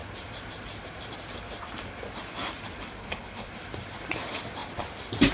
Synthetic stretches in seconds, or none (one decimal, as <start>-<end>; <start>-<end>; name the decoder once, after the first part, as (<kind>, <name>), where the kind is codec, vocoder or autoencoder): 3.0-3.5 (codec, HILCodec)